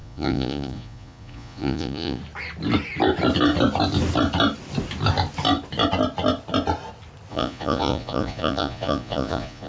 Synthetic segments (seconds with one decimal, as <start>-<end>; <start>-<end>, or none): 0.0-2.2; 7.3-9.7